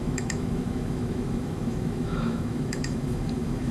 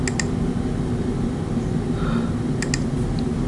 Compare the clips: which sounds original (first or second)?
second